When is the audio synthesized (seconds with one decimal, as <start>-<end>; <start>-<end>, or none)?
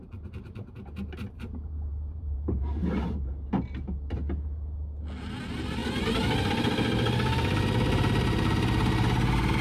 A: 0.0-3.3